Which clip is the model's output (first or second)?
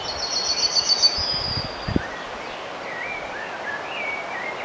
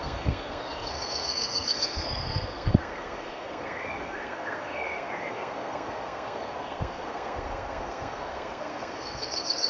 second